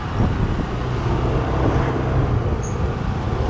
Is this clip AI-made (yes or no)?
no